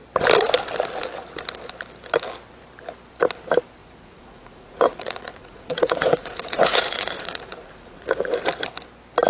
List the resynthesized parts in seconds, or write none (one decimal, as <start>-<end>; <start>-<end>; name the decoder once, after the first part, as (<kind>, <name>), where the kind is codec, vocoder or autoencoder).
3.8-8.3 (vocoder, Vocos)